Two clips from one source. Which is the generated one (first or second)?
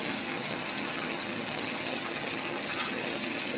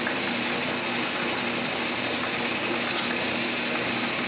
first